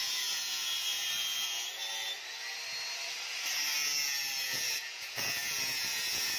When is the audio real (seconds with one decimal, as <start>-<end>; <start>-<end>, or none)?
1.8-4.4